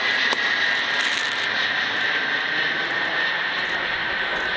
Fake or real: real